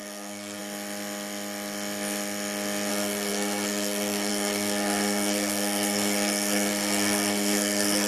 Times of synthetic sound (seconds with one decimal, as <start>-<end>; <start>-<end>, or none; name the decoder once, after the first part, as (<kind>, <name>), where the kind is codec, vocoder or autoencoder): 0.0-0.6 (codec, SNAC); 2.9-8.1